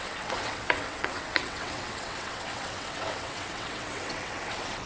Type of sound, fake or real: fake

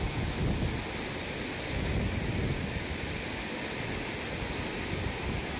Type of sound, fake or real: real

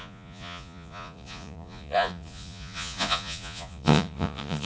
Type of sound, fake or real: fake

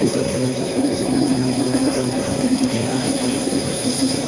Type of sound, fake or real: fake